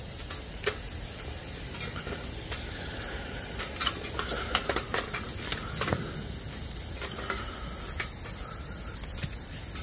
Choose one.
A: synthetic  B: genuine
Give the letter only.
B